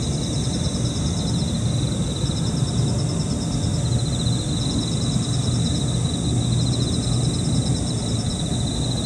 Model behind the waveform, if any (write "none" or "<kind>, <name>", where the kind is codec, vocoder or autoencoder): none